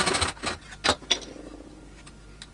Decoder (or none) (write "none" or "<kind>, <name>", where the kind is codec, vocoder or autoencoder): none